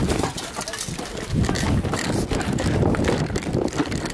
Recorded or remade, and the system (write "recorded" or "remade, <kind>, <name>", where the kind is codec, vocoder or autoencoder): recorded